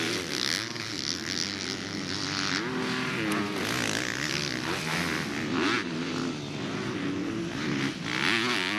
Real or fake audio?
real